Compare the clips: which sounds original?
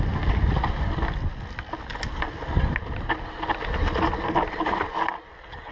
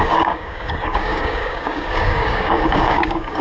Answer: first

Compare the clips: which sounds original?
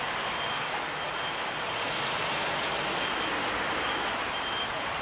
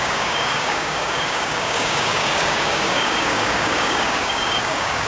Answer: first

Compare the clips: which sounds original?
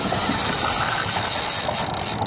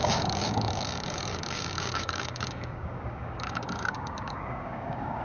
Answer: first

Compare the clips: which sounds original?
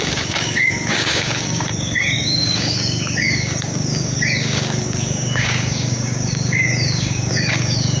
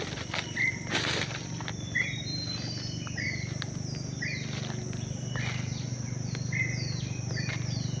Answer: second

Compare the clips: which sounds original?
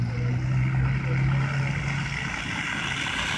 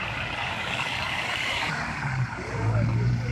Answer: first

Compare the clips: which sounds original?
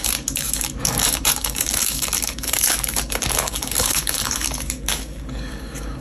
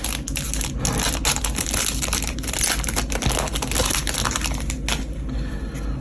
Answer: second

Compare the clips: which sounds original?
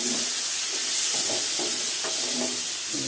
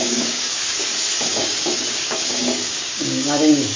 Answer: first